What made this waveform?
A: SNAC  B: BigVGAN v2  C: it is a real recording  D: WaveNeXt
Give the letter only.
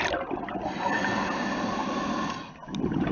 C